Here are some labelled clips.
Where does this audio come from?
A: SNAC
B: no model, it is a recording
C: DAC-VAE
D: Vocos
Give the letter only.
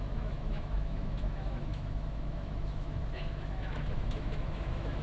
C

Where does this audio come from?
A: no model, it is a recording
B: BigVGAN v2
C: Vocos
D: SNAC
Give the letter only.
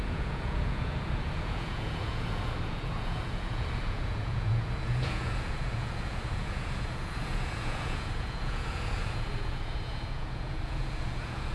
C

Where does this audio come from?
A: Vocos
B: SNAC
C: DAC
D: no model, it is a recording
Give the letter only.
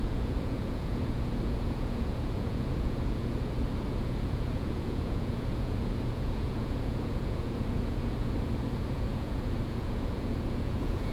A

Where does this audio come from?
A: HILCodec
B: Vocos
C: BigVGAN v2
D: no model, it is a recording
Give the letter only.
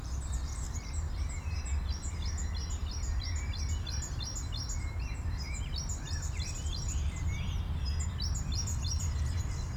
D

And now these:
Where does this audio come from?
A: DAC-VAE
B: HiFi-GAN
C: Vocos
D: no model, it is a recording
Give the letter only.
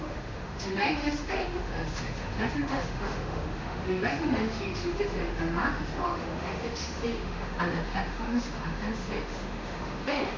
A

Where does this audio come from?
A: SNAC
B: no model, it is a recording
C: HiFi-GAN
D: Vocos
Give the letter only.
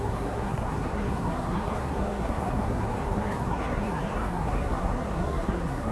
A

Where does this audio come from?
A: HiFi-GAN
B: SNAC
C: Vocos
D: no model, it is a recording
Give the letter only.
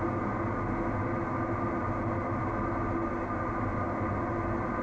D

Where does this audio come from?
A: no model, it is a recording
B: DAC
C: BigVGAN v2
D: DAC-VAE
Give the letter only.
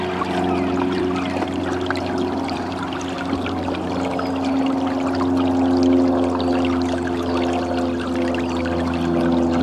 A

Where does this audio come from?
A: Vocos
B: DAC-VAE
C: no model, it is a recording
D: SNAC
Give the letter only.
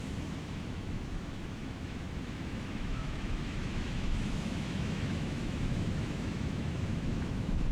B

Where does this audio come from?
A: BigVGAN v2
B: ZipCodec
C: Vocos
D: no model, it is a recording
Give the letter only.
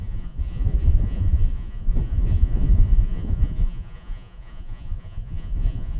C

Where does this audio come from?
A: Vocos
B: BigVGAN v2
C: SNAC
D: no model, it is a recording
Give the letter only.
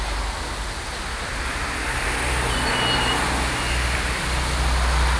D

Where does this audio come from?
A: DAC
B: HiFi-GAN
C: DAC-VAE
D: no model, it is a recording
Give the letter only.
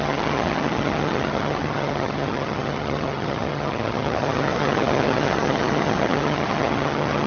B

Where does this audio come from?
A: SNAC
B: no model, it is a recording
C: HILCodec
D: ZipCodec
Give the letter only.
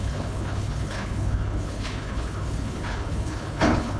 C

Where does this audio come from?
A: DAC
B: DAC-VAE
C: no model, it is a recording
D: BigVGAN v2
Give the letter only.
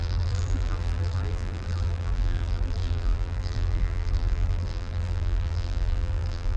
D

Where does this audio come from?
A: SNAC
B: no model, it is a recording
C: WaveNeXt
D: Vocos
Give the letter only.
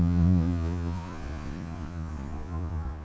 D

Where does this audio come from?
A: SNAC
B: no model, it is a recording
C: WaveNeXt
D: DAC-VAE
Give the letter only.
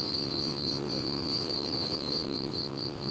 C